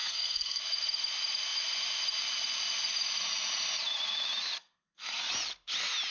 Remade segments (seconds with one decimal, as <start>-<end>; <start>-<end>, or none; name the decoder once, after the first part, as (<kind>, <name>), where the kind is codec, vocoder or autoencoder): 0.0-0.6 (codec, SNAC); 4.6-5.2